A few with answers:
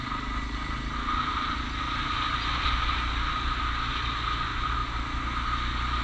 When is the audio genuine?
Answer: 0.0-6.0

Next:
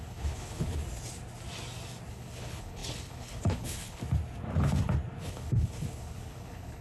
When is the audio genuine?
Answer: 0.8-2.1; 4.0-5.2

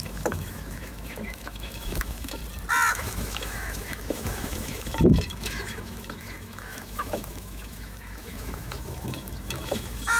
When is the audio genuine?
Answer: 2.4-2.9

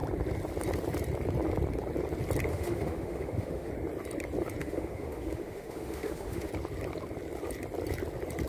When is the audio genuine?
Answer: 0.0-2.5; 3.7-4.6; 6.5-8.5